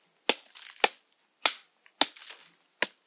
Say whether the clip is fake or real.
real